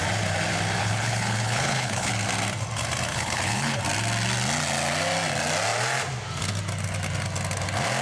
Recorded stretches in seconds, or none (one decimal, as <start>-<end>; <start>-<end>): 0.0-0.8; 2.1-3.1; 3.8-8.0

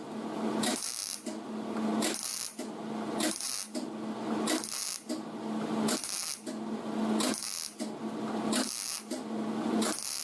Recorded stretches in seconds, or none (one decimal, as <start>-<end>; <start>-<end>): 0.0-10.2

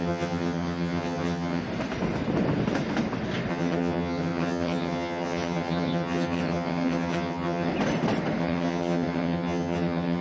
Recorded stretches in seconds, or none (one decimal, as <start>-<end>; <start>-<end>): 1.6-3.5; 7.7-8.4

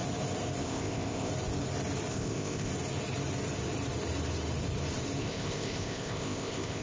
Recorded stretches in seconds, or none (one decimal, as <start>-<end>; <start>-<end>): 0.0-0.6; 1.3-2.1; 2.7-5.2

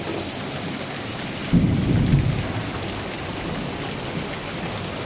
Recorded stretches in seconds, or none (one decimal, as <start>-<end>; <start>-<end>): 0.0-5.1

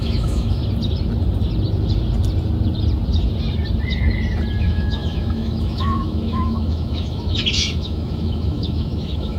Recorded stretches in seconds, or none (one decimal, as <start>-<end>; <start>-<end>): 0.6-4.6

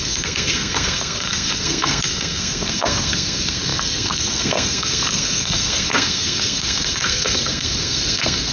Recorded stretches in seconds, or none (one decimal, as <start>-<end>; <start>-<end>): none